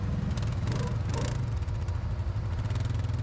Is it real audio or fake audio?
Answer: real